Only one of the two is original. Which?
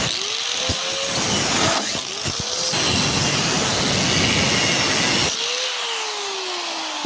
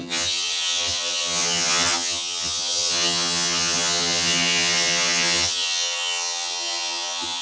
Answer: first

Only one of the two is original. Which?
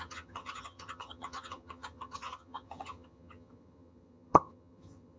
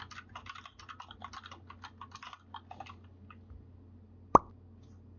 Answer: second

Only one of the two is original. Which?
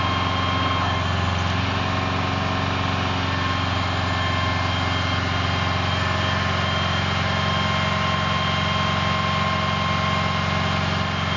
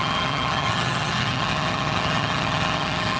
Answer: first